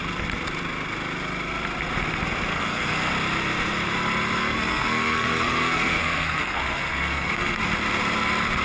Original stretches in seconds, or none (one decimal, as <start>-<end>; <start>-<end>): 0.0-2.5; 3.1-4.4; 7.6-8.6